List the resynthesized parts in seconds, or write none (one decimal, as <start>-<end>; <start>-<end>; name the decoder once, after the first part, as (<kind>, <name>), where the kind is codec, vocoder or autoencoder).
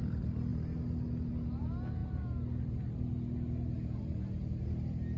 none